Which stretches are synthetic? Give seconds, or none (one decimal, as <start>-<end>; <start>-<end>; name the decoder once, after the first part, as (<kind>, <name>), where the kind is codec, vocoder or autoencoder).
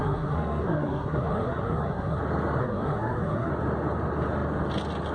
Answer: 0.0-2.2 (codec, SNAC); 2.6-3.5